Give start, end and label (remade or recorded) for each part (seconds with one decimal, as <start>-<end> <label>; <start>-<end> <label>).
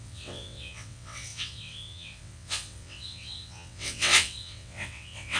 0.0-5.4 remade